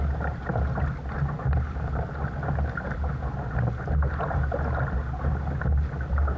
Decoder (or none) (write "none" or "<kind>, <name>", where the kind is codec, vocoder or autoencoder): none